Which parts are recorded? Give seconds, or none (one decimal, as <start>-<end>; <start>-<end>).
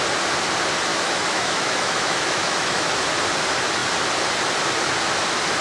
0.0-0.9; 2.9-5.6